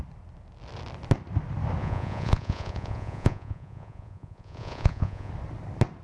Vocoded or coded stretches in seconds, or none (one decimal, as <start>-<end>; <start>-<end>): 1.8-5.3